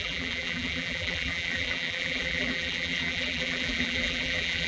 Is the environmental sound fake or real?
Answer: fake